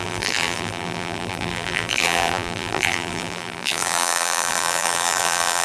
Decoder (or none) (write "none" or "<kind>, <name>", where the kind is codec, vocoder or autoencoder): vocoder, BigVGAN v2